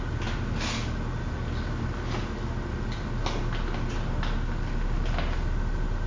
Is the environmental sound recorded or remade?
recorded